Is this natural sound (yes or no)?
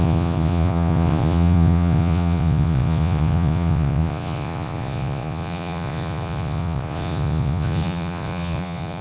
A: no